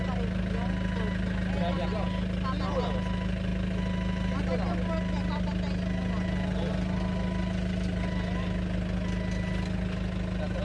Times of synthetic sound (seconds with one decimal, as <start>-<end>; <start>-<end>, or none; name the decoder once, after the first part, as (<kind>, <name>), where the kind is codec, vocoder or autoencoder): none